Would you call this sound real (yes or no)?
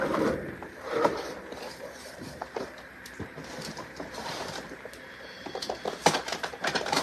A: no